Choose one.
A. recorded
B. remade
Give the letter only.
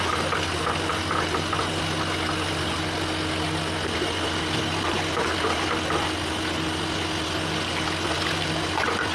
A